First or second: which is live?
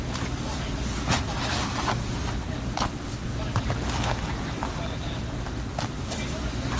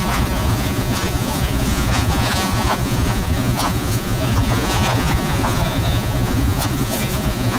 first